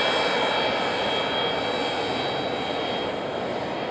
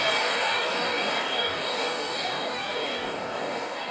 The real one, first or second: first